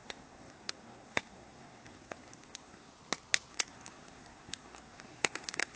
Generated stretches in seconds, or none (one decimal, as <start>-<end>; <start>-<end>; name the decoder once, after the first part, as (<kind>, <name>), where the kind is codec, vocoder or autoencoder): 0.0-2.9 (codec, SNAC); 3.5-5.8